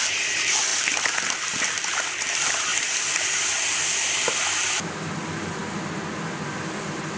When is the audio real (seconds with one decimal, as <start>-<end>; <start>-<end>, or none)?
5.6-6.5

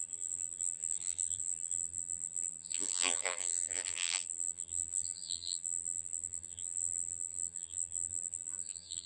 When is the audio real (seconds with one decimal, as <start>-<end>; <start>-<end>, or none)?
none

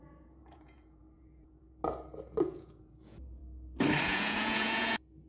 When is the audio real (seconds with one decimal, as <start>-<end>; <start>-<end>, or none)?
1.8-2.4; 3.4-4.0

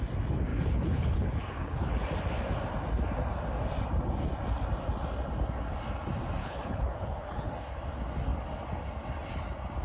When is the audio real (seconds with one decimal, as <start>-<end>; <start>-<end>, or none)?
0.0-0.5; 2.0-6.4; 7.5-9.8

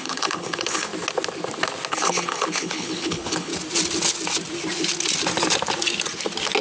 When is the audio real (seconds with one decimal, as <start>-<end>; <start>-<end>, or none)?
0.9-1.9; 3.5-6.6